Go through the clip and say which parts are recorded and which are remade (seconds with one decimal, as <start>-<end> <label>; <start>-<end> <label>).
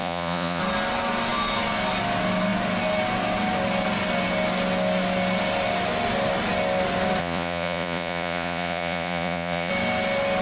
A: 0.0-0.6 remade; 0.6-7.2 recorded; 7.2-9.7 remade; 9.7-10.4 recorded